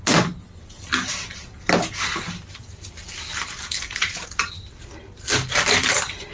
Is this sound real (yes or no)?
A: yes